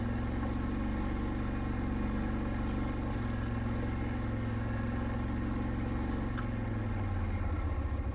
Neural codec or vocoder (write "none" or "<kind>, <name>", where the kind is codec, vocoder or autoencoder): none